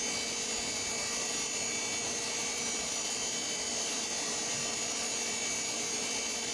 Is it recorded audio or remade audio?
recorded